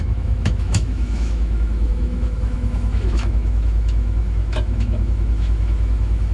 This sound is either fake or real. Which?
fake